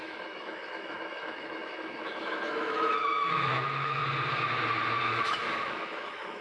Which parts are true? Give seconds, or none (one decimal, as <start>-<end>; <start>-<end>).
4.0-5.0